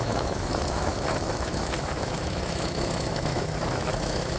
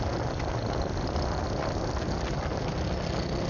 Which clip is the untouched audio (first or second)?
second